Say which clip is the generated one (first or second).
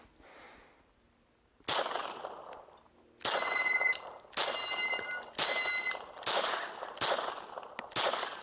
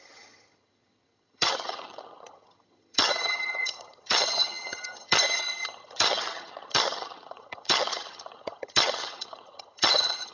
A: second